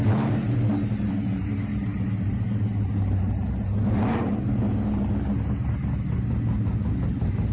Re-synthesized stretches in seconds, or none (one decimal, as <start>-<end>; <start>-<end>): 1.9-3.3